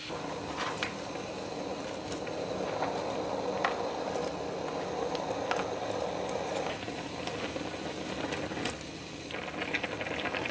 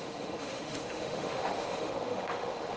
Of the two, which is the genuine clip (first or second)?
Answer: first